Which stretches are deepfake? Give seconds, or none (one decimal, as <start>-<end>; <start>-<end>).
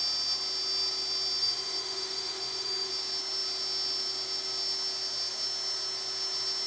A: 1.4-2.9